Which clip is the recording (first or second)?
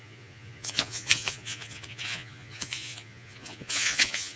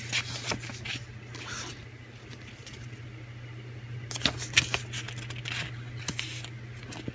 second